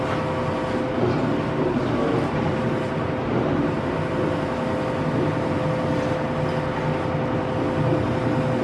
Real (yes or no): yes